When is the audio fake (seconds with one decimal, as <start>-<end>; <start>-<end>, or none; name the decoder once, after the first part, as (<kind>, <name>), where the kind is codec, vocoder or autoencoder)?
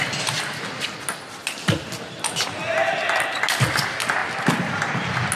none